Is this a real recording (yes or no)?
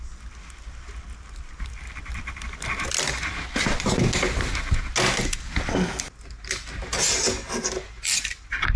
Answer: yes